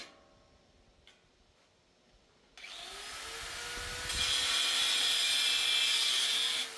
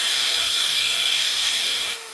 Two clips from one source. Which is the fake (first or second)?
second